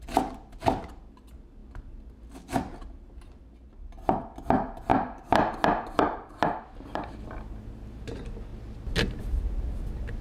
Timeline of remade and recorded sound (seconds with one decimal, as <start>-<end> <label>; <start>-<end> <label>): 0.0-4.9 recorded; 4.9-5.4 remade; 5.4-10.2 recorded